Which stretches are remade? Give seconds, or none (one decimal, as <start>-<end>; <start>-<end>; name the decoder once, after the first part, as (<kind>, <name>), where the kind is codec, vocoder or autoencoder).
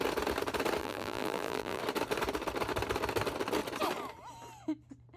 0.8-1.8 (vocoder, BigVGAN v2)